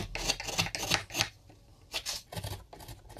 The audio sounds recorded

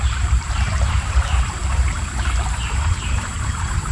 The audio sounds remade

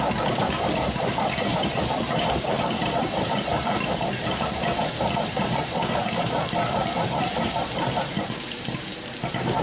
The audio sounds remade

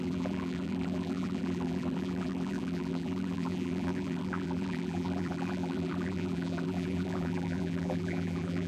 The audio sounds remade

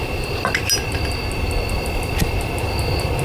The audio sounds recorded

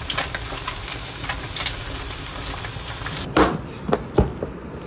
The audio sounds remade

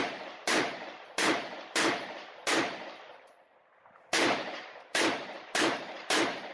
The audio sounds remade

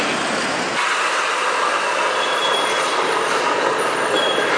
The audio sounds recorded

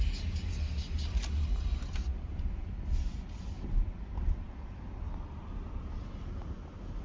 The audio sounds recorded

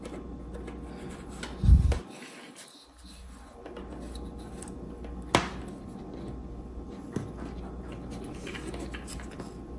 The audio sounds recorded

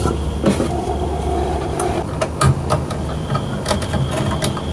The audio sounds recorded